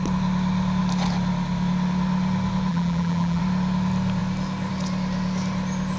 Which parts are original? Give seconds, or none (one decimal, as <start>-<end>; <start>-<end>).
0.0-2.7; 3.4-6.0